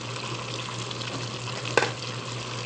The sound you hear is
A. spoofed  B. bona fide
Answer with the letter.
B